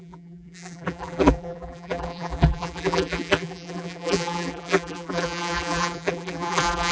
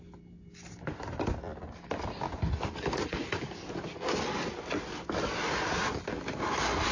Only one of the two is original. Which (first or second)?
second